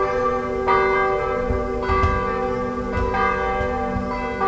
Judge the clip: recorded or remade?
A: recorded